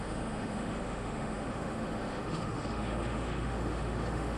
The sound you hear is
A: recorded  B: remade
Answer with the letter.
B